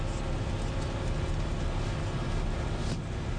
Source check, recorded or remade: recorded